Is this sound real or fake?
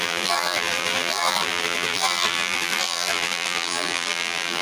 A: fake